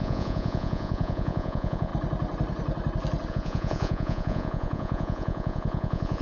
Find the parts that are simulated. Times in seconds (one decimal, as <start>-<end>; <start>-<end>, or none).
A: 0.0-1.9; 3.3-6.2